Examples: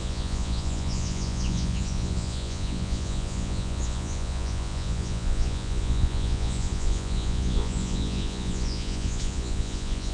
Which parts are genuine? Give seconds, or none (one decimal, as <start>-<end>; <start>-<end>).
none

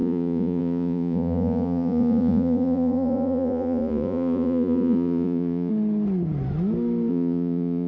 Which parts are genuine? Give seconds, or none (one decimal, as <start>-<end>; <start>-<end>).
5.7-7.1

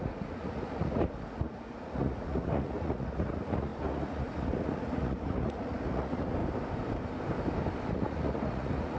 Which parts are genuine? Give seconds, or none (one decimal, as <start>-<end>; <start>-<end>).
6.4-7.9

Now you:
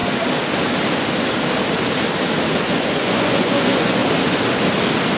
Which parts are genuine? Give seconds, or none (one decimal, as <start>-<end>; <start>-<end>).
0.0-2.7; 4.0-5.2

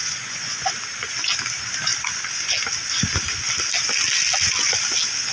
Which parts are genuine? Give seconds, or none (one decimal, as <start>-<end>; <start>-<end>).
0.7-5.3